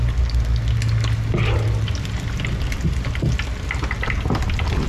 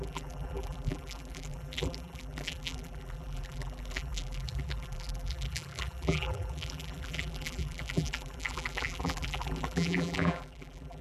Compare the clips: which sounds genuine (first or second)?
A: first